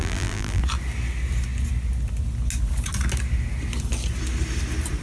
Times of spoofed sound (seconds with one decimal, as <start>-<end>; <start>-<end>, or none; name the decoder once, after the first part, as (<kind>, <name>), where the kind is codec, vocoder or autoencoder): 0.0-0.6 (vocoder, BigVGAN v2)